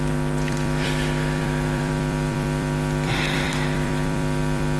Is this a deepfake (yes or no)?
yes